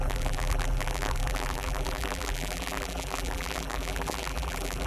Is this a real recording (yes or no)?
no